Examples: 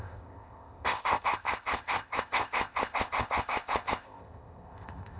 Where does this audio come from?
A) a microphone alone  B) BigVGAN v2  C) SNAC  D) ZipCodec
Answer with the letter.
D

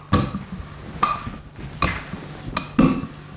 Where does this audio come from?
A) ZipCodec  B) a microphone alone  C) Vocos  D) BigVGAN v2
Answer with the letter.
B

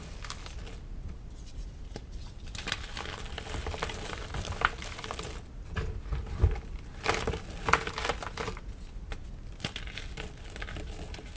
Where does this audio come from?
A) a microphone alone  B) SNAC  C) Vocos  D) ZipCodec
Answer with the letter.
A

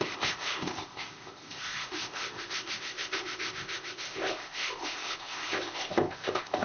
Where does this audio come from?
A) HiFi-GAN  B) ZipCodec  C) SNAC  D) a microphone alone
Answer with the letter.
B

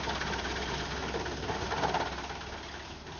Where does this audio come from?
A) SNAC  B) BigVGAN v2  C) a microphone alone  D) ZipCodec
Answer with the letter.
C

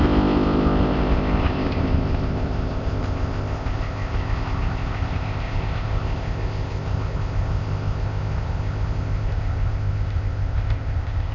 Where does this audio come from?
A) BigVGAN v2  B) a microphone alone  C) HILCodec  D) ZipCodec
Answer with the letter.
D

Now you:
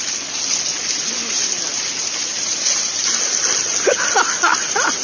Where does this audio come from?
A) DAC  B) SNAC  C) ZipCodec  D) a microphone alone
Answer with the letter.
D